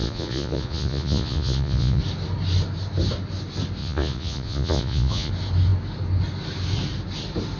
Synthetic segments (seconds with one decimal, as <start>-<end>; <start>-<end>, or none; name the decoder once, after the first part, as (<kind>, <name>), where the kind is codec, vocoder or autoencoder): 0.0-2.0 (vocoder, Vocos); 3.8-5.3